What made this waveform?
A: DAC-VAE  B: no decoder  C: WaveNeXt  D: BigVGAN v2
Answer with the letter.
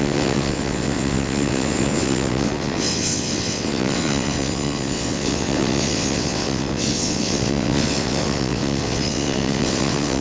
C